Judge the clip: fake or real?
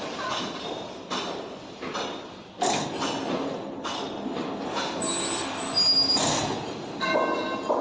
real